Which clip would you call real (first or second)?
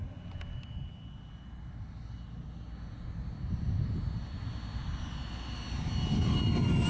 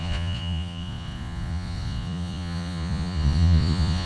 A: first